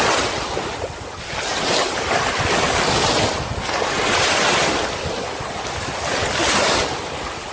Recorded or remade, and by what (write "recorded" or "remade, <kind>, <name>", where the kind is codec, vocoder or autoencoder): recorded